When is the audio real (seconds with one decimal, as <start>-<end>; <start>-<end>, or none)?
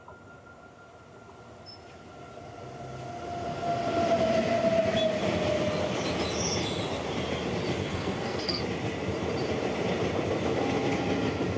0.0-7.8; 8.6-11.6